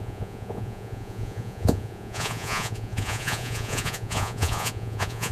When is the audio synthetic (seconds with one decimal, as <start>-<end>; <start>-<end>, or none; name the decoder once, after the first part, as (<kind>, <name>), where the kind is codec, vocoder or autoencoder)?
0.0-5.3 (vocoder, Vocos)